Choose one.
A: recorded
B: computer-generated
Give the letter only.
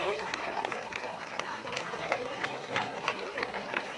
B